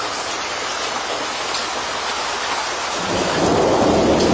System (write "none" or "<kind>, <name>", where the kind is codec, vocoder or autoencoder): none